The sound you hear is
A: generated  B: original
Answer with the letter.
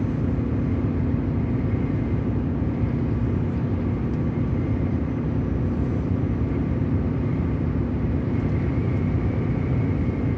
B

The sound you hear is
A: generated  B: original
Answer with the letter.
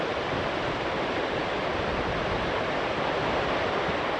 A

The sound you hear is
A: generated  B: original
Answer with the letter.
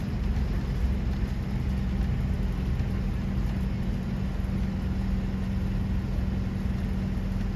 B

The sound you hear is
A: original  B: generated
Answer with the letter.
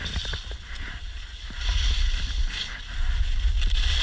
A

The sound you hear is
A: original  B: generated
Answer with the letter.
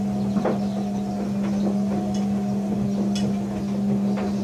A